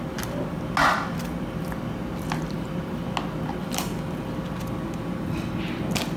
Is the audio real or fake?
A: real